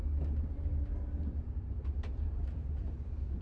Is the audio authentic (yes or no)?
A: yes